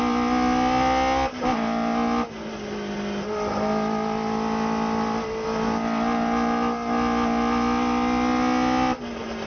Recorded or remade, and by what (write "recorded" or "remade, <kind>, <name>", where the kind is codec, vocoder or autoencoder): recorded